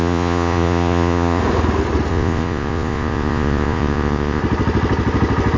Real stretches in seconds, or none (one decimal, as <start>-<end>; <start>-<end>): 1.4-2.1; 4.4-5.6